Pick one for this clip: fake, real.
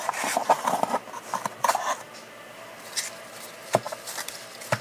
real